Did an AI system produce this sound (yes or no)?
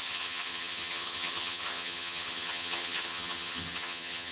yes